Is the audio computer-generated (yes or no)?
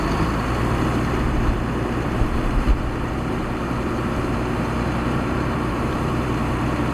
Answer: yes